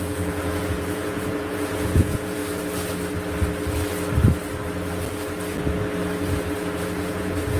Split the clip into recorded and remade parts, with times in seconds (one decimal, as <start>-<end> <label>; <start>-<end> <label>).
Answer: 0.0-2.4 remade; 2.4-6.7 recorded; 6.7-7.6 remade